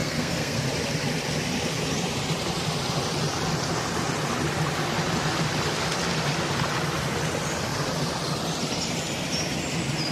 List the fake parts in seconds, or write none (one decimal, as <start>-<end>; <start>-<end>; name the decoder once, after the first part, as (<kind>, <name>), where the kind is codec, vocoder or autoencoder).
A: 0.0-0.6 (codec, SNAC)